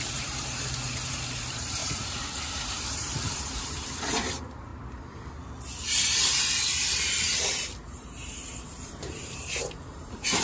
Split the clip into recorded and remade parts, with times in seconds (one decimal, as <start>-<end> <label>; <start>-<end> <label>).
0.0-4.7 remade; 4.7-6.4 recorded; 6.4-10.4 remade